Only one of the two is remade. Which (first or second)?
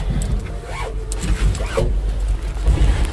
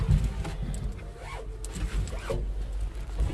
first